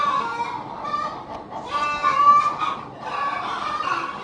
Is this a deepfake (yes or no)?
no